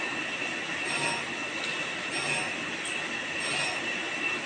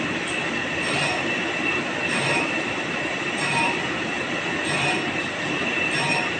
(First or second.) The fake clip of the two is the second